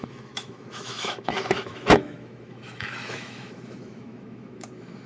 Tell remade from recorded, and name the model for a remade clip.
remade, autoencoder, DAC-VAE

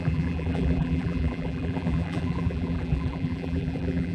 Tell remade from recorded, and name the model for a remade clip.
remade, vocoder, BigVGAN v2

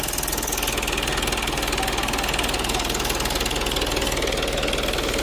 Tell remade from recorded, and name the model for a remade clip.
recorded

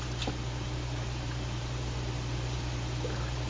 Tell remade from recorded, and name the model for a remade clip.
remade, vocoder, BigVGAN v2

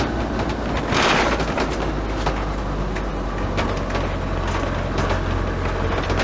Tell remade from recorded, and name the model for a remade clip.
recorded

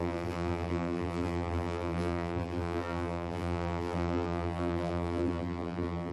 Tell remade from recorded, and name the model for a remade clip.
remade, vocoder, BigVGAN v2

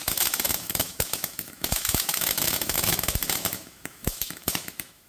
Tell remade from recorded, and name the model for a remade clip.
remade, autoencoder, DAC-VAE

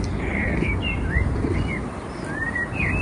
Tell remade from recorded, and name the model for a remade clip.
recorded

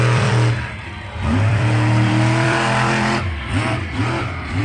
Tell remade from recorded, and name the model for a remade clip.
remade, vocoder, BigVGAN v2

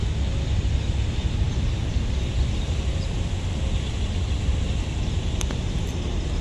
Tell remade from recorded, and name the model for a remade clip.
recorded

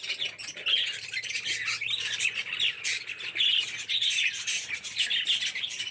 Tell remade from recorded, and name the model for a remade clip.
recorded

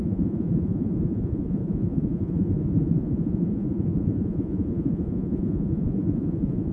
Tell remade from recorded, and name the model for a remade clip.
remade, vocoder, Vocos